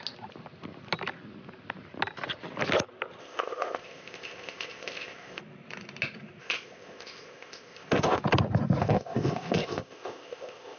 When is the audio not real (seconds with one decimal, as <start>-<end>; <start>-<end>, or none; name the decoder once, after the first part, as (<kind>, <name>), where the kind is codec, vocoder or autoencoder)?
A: 3.2-5.4 (codec, ZipCodec); 6.4-8.2; 8.8-10.8